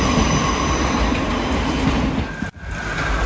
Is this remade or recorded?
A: recorded